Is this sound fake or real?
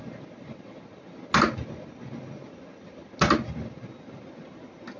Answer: real